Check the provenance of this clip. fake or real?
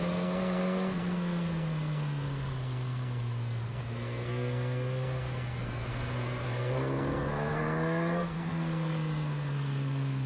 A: fake